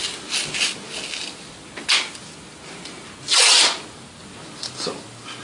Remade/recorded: recorded